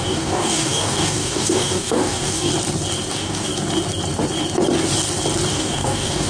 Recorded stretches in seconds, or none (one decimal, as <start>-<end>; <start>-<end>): 2.5-3.1; 3.5-5.5